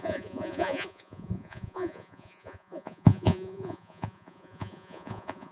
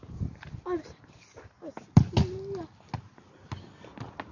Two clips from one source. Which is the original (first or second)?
second